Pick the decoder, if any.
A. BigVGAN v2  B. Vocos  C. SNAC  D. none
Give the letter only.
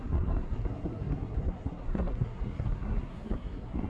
C